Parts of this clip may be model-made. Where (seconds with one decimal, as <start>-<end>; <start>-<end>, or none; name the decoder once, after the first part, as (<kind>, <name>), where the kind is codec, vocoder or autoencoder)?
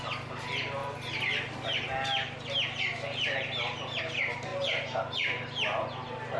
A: none